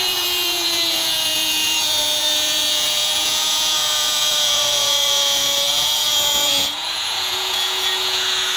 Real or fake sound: fake